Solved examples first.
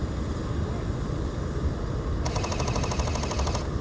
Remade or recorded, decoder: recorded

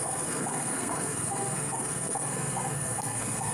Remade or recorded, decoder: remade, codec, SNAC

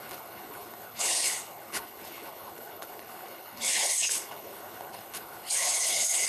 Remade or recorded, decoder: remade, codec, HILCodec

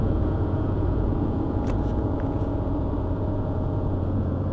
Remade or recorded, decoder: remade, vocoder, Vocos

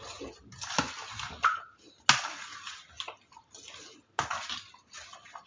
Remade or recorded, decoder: recorded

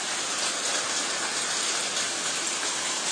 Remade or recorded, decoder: recorded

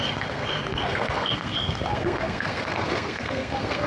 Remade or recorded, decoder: remade, codec, SNAC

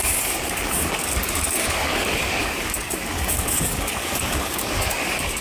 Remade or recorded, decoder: remade, codec, DAC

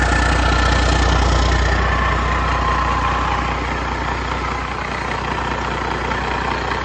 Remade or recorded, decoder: recorded